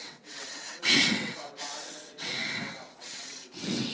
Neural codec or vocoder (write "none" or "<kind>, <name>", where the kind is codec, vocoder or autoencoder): vocoder, WaveNeXt